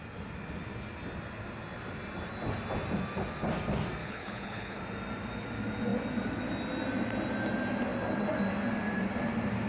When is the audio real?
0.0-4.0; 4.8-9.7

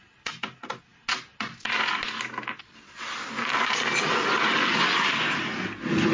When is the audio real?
0.0-6.1

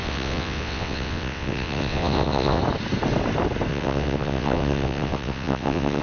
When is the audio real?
2.6-3.7